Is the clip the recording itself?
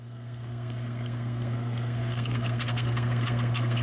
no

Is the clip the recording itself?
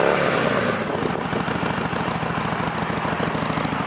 yes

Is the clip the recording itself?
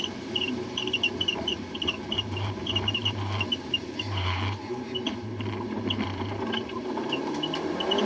no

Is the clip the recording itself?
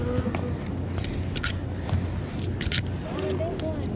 yes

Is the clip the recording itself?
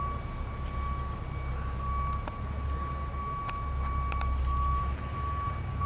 yes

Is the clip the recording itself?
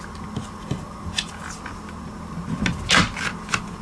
yes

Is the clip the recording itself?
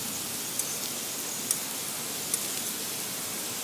yes